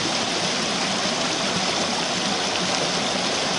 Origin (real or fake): real